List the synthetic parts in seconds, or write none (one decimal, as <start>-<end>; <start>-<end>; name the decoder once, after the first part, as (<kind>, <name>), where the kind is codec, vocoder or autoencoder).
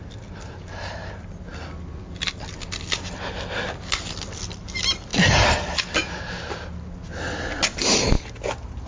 none